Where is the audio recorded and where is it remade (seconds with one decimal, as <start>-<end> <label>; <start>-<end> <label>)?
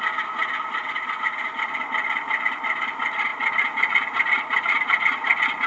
0.0-5.7 recorded